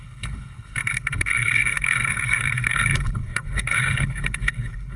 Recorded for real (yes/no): no